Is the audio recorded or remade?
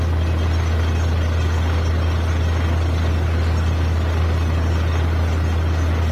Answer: recorded